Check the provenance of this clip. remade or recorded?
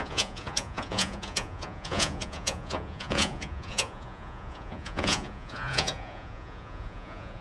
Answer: remade